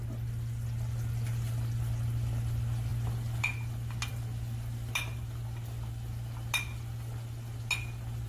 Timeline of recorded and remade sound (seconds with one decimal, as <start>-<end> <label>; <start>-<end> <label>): 0.0-8.3 recorded